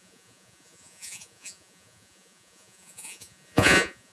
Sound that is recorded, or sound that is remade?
remade